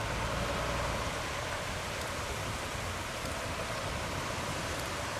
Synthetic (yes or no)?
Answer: no